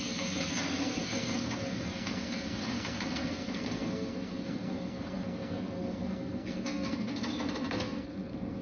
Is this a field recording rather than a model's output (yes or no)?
no